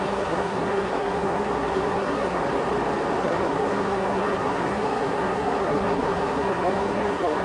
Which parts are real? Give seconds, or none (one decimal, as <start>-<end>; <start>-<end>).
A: 2.4-3.2